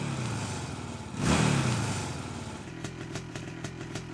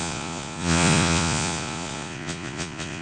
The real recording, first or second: first